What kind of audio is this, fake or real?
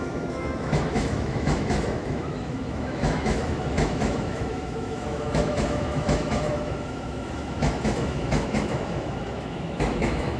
fake